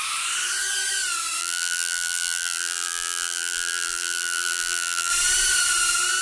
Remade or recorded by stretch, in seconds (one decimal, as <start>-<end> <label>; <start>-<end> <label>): 0.0-1.4 recorded; 1.4-5.1 remade; 5.1-6.2 recorded